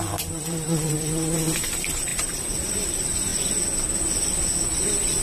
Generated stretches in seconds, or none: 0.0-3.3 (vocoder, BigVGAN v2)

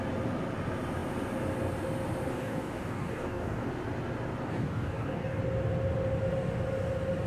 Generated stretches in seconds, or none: 2.3-3.7 (codec, DAC); 4.5-5.4

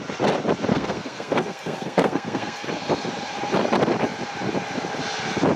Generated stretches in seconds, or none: 0.7-2.7 (codec, SNAC)

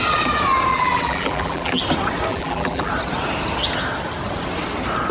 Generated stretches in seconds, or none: 0.7-1.8 (vocoder, BigVGAN v2); 2.3-2.9